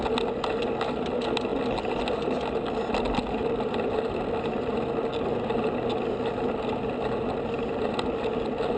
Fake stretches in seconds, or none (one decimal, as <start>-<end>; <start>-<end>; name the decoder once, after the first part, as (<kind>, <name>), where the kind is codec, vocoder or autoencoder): none